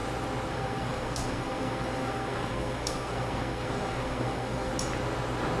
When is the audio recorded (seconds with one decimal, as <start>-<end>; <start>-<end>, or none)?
0.0-0.5; 4.7-5.6